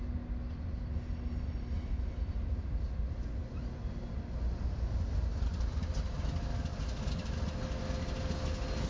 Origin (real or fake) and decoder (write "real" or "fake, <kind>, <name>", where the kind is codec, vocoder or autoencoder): real